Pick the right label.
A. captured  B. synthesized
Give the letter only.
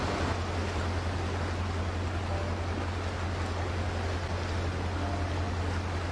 A